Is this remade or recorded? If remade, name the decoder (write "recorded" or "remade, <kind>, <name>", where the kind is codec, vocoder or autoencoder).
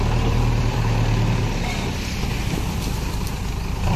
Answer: remade, vocoder, BigVGAN v2